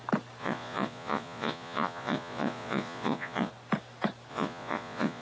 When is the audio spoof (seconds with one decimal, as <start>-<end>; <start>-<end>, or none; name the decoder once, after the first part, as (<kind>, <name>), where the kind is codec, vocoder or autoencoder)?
0.4-3.5 (vocoder, Vocos); 4.3-5.2